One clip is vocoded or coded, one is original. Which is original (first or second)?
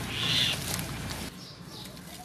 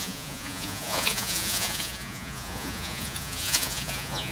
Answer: first